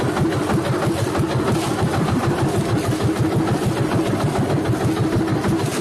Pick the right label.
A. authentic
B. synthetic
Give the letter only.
A